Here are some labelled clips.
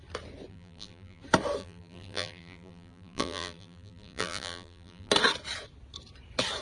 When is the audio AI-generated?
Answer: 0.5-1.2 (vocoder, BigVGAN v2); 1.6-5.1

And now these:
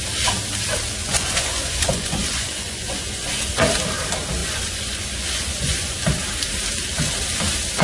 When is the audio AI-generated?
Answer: 1.0-3.6 (vocoder, Vocos); 4.4-6.0

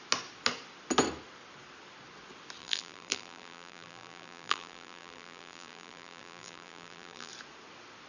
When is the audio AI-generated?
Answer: 2.6-7.3 (vocoder, BigVGAN v2)

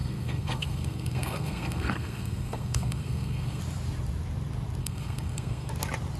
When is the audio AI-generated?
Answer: 0.0-3.6 (codec, SNAC); 4.8-5.7